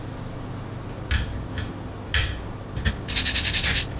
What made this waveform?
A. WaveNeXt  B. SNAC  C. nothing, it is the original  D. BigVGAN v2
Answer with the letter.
C